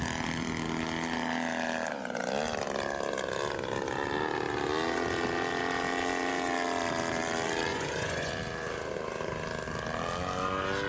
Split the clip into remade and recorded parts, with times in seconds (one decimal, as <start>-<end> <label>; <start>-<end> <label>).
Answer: 0.0-7.7 recorded; 7.7-8.3 remade; 8.3-10.9 recorded